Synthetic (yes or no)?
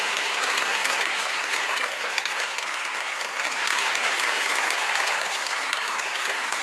yes